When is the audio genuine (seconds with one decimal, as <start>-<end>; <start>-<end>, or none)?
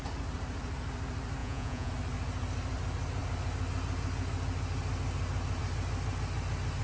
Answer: 0.0-1.4; 1.9-6.8